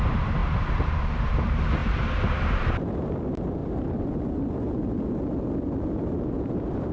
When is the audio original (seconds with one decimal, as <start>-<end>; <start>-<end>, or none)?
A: 3.6-6.4